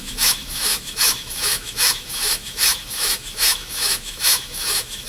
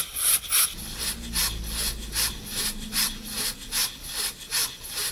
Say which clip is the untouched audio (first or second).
second